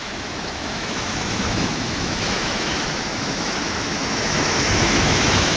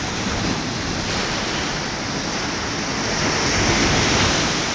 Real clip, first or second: second